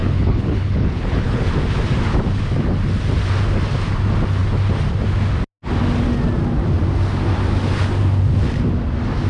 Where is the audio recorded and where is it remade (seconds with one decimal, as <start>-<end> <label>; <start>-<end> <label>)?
0.0-1.5 remade; 1.5-9.3 recorded